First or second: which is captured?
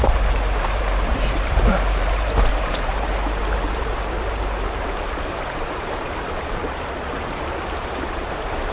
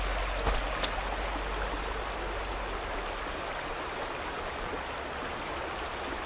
second